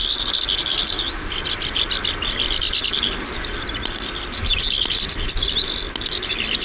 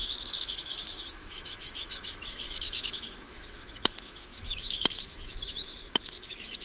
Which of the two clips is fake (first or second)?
second